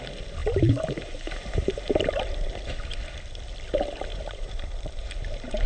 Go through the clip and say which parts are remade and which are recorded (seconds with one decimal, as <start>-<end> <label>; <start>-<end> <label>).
0.0-0.4 recorded; 0.4-2.1 remade; 2.1-4.1 recorded; 4.1-5.7 remade